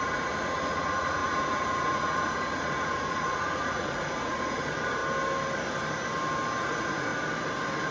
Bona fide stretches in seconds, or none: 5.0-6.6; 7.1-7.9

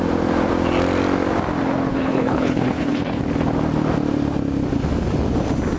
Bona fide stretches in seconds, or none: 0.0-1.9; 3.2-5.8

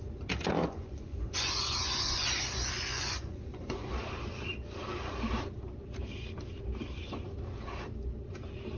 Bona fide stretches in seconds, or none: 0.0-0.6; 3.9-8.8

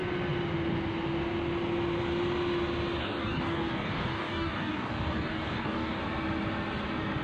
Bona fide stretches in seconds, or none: 0.0-3.0; 6.0-7.2

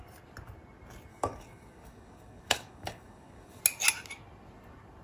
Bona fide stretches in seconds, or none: 0.0-1.1; 3.6-5.0

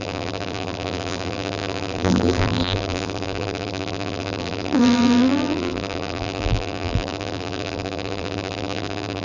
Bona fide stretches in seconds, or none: none